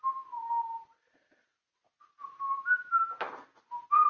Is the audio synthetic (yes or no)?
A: no